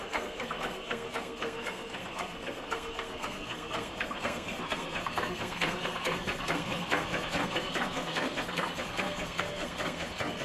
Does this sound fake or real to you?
fake